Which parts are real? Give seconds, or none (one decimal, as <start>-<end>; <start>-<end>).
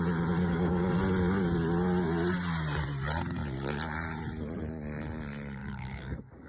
0.0-0.4; 0.9-5.6